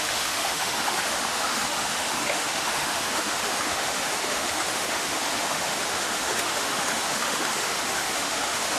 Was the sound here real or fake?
fake